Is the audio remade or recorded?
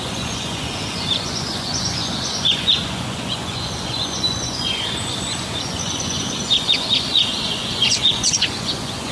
remade